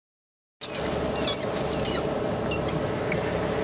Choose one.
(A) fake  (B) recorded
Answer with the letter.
B